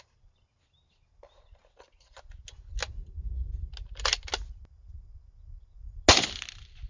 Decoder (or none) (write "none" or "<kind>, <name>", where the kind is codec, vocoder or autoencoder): none